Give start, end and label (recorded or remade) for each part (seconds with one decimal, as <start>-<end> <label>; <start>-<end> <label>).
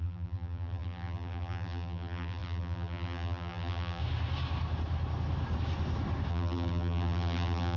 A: 0.0-4.0 remade; 4.0-6.3 recorded; 6.3-7.8 remade